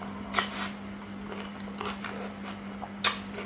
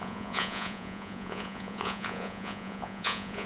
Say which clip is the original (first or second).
first